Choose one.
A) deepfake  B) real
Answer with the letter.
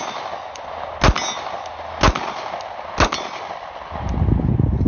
B